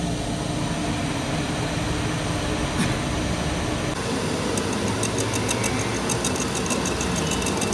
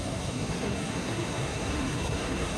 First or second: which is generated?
second